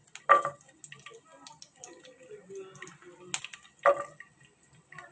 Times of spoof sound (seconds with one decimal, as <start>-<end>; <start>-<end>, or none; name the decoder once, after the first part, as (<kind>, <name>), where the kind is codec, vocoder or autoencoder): none